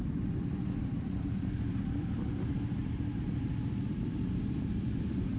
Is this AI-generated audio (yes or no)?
yes